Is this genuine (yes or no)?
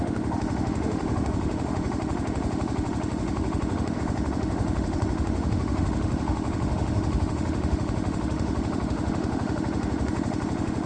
no